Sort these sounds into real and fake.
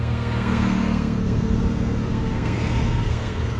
fake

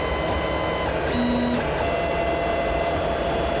real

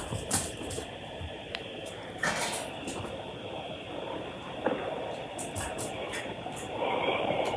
fake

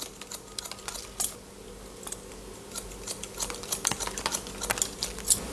real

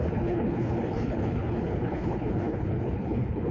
fake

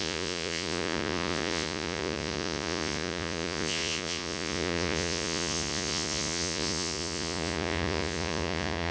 fake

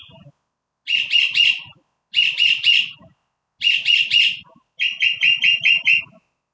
real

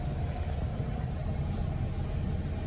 real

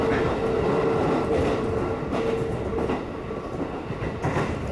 real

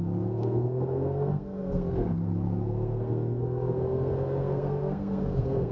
fake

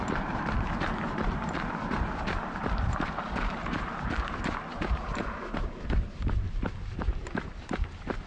fake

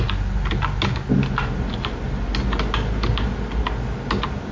real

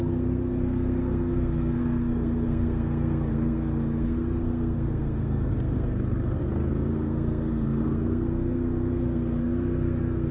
fake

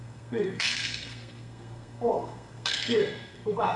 fake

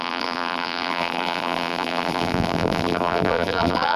fake